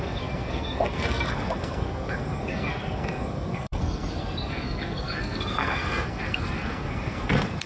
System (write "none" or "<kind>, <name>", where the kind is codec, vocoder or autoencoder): codec, SNAC